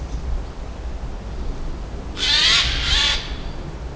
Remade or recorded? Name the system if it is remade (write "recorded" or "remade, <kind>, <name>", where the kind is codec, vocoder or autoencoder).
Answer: recorded